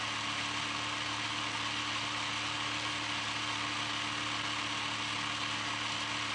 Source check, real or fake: real